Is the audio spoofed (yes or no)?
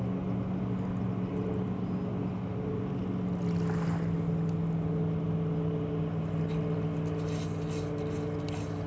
no